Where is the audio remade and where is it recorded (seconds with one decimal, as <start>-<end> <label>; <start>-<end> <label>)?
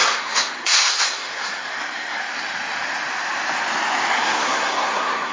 0.0-2.2 remade; 2.2-4.1 recorded; 4.1-5.3 remade